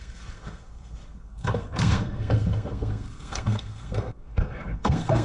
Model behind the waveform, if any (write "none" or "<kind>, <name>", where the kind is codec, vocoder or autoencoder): codec, SNAC